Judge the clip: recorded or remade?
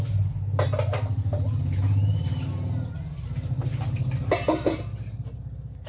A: recorded